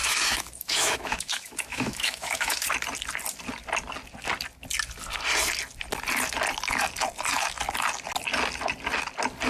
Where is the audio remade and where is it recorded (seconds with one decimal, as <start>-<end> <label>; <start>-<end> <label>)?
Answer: 0.0-2.6 remade; 2.6-9.5 recorded